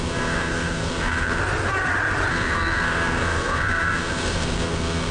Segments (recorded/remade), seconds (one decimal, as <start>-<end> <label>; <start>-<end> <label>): 0.0-1.4 remade; 1.4-2.3 recorded; 2.3-5.1 remade